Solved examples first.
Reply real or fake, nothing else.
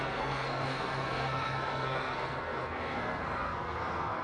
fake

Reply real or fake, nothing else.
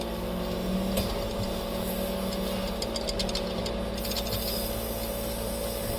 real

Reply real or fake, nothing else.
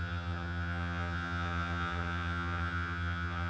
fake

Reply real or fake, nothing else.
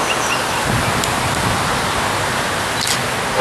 real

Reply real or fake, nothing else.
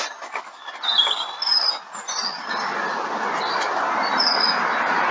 real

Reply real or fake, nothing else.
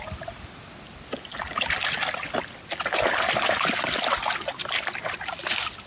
real